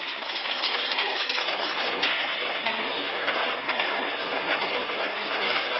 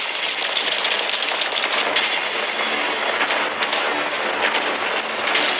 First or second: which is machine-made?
first